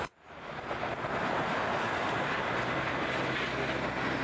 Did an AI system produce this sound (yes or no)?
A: no